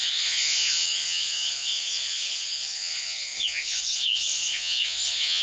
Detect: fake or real fake